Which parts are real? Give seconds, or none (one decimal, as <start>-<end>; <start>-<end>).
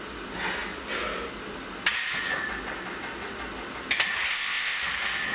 0.0-4.3; 4.8-5.3